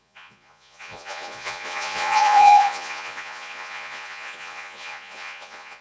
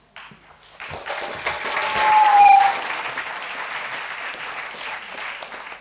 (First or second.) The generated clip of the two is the first